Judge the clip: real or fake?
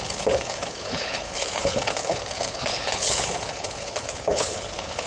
fake